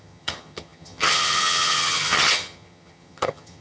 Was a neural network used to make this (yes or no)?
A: yes